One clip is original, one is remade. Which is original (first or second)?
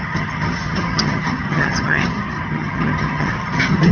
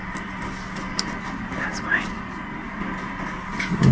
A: second